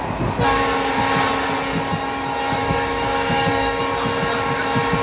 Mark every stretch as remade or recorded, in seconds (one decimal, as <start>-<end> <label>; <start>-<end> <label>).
0.0-2.6 recorded; 2.6-3.8 remade; 3.8-5.0 recorded